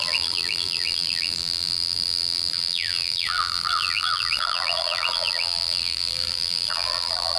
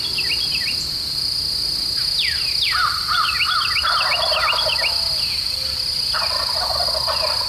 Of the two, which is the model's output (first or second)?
first